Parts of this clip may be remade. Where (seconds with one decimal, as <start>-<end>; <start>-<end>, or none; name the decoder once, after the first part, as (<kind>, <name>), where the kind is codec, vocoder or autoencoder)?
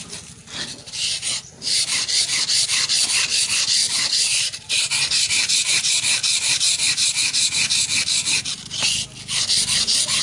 3.8-5.5 (vocoder, BigVGAN v2); 6.2-7.1